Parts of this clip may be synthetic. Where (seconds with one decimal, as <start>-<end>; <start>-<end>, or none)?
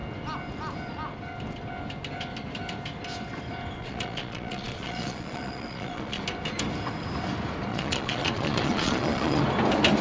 3.8-6.2; 7.7-9.4